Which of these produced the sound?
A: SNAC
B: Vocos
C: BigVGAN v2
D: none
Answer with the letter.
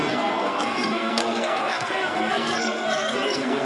A